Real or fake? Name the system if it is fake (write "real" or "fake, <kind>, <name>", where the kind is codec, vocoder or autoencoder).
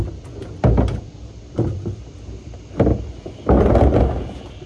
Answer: real